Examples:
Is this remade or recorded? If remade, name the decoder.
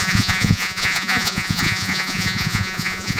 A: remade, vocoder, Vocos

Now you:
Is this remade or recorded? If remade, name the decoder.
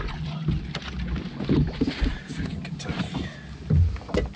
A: recorded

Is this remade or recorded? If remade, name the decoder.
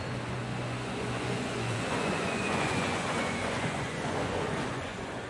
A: remade, vocoder, Vocos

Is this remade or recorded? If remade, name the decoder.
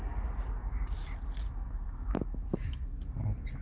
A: recorded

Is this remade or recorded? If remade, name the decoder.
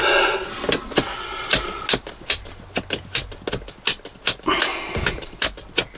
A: recorded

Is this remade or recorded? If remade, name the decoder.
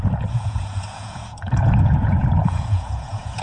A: remade, vocoder, Vocos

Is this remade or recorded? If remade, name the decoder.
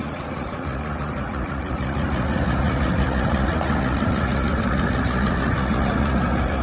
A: remade, vocoder, Vocos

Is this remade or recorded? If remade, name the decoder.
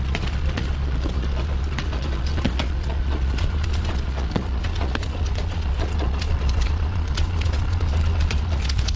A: remade, vocoder, Vocos